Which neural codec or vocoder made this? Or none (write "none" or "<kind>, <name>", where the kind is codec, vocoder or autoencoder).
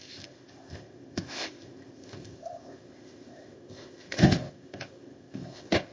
codec, ZipCodec